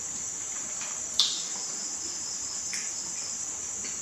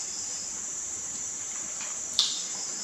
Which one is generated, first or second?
second